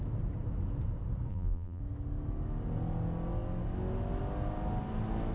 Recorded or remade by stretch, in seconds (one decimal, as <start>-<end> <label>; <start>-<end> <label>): 0.0-1.3 recorded; 1.3-1.8 remade; 1.8-5.3 recorded